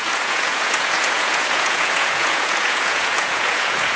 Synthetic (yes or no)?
yes